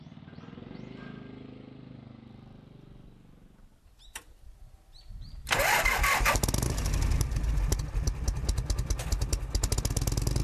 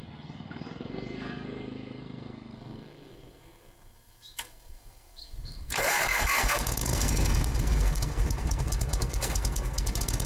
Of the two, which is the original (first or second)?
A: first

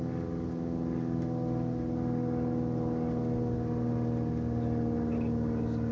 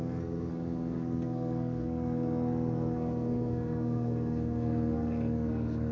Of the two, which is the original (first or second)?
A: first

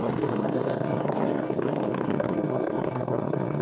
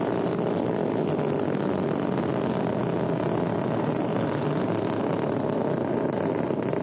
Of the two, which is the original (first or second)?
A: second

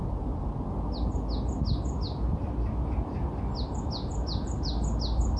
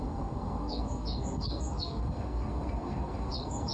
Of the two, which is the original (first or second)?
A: first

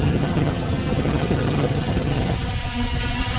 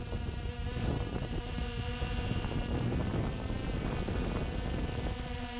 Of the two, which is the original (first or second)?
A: second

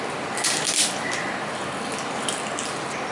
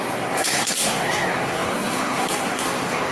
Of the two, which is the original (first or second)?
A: first